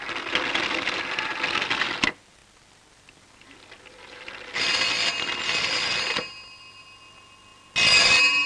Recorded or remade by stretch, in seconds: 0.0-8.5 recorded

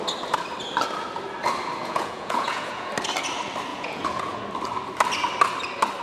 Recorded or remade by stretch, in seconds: 0.0-1.8 recorded; 1.8-2.9 remade; 2.9-3.7 recorded; 3.7-4.4 remade; 4.4-6.0 recorded

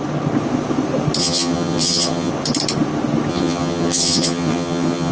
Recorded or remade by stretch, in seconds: 0.0-1.2 recorded; 1.2-2.3 remade; 2.3-3.3 recorded; 3.3-5.1 remade

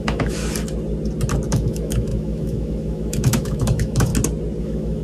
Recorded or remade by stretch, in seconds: 0.0-0.4 remade; 0.4-1.5 recorded; 1.5-4.1 remade; 4.1-4.6 recorded; 4.6-5.0 remade

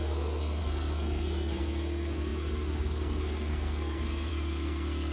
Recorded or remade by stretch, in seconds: 0.0-5.1 remade

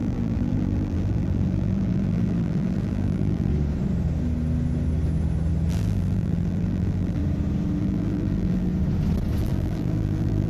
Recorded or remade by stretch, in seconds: 0.0-3.5 remade; 3.5-5.7 recorded; 5.7-7.2 remade; 7.2-7.8 recorded; 7.8-8.7 remade; 8.7-9.4 recorded; 9.4-10.5 remade